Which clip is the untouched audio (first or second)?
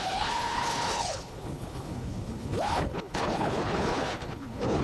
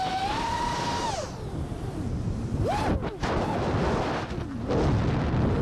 second